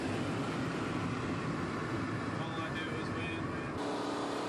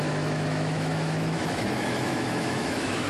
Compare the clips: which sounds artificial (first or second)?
second